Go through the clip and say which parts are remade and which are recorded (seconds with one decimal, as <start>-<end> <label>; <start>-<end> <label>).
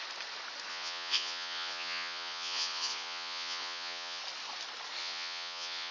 0.0-0.7 recorded; 0.7-4.2 remade; 4.2-5.0 recorded; 5.0-5.9 remade